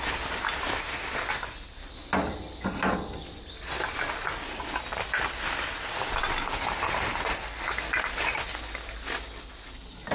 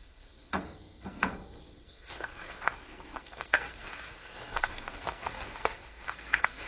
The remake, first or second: second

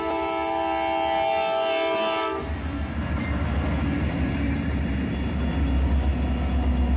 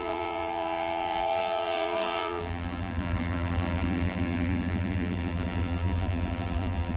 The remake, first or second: second